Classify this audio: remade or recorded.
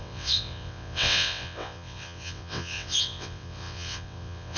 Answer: remade